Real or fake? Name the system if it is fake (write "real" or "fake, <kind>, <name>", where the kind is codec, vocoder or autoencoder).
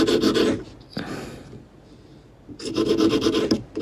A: real